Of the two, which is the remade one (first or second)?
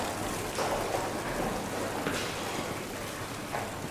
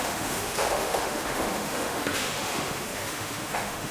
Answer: second